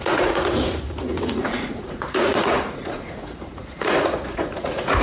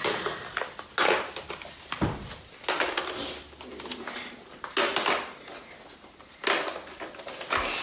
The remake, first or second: first